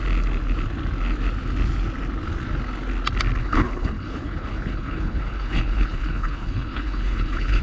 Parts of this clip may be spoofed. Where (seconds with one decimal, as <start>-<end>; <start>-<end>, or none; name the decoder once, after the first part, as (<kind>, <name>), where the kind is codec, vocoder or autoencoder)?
3.4-7.6 (codec, HILCodec)